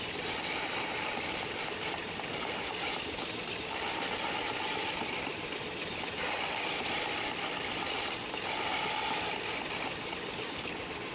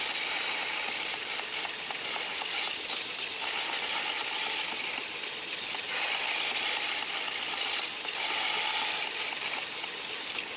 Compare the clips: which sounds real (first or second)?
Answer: second